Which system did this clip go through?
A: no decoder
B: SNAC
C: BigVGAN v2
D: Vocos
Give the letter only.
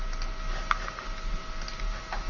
A